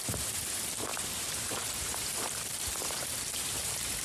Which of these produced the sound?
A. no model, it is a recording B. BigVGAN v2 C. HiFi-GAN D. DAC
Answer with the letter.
B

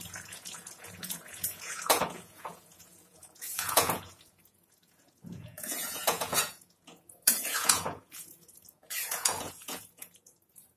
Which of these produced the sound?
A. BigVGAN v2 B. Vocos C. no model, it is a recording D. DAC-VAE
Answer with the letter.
B